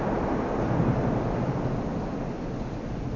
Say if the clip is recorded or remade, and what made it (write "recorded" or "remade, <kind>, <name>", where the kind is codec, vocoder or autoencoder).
recorded